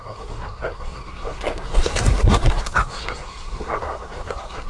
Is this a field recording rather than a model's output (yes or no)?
no